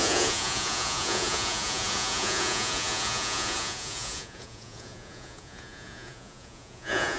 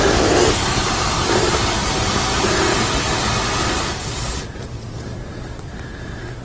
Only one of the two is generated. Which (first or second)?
first